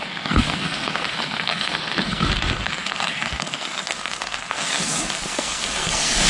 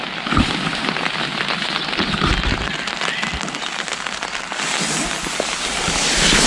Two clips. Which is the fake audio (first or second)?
first